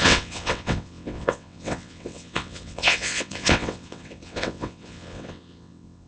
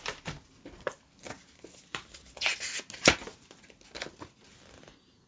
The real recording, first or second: second